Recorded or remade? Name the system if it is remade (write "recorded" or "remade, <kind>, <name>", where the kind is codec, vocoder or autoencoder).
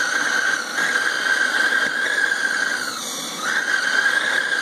recorded